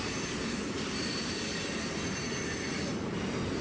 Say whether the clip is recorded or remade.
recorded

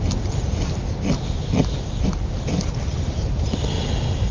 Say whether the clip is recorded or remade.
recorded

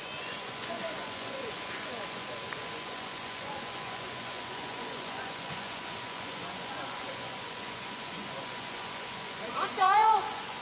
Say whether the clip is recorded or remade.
remade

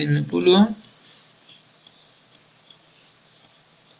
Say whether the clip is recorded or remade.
recorded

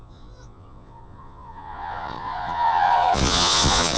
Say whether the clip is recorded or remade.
remade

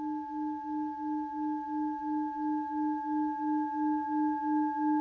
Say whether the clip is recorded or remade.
recorded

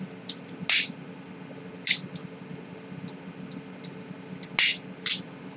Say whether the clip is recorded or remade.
recorded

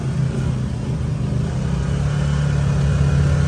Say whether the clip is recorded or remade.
recorded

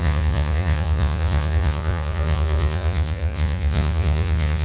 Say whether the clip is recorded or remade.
remade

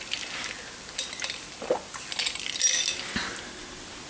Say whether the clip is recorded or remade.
recorded